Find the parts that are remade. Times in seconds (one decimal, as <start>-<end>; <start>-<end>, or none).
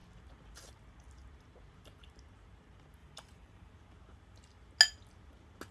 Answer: 3.0-3.7